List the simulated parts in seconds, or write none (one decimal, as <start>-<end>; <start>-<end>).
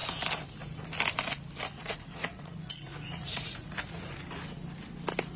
1.8-4.1